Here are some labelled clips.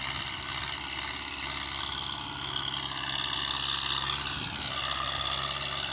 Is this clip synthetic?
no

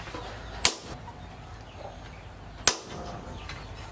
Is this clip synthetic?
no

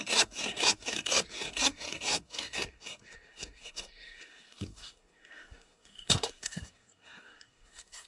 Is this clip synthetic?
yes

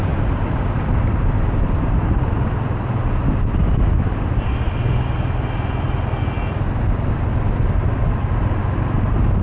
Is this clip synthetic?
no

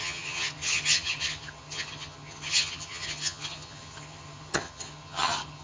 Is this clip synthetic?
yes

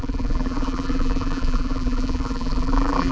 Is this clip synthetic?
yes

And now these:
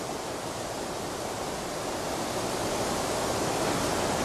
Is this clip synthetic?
no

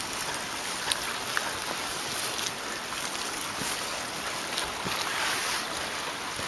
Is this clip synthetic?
no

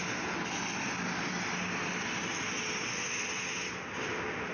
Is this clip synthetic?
no